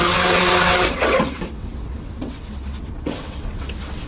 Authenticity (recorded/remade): remade